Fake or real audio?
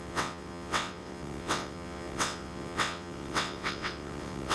fake